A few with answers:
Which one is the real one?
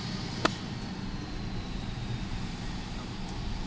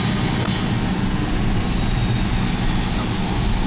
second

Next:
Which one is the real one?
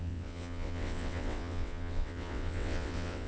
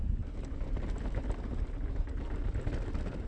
second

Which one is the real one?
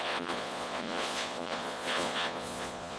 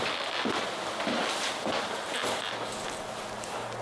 second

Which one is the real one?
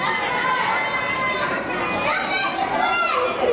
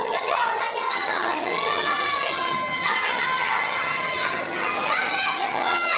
first